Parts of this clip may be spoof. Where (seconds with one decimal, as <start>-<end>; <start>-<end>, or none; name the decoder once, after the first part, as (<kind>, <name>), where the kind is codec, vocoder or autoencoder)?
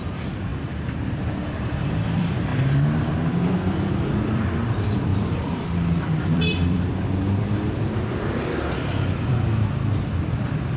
0.0-10.8 (vocoder, BigVGAN v2)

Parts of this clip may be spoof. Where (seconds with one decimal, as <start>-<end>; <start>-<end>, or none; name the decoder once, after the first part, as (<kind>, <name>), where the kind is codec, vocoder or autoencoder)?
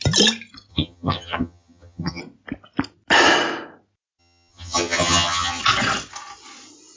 0.7-2.2 (vocoder, HiFi-GAN); 4.2-5.6